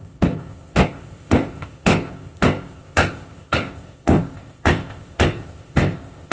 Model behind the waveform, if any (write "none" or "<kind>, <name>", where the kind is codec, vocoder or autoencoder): codec, ZipCodec